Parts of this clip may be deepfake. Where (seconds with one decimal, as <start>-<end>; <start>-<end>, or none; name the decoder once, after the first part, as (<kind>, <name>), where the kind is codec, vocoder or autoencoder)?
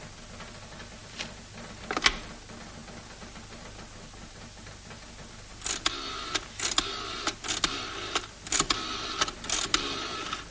none